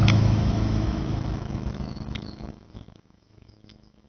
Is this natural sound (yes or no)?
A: no